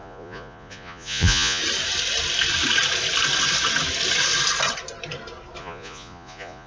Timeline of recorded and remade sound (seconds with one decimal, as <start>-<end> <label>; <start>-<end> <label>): 0.0-1.6 remade; 1.6-5.6 recorded; 5.6-6.7 remade